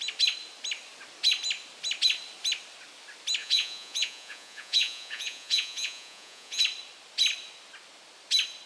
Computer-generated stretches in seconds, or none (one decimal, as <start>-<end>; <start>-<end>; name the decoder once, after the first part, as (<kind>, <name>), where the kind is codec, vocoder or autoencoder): 3.4-6.6 (vocoder, Vocos)